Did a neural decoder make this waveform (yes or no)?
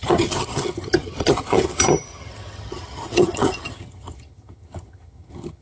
yes